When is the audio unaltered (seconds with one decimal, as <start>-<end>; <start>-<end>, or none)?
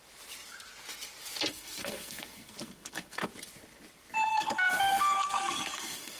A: 0.0-1.5; 3.3-4.3